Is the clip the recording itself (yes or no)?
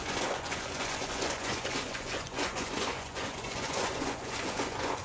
no